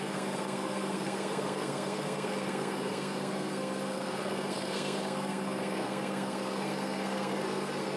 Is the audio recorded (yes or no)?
no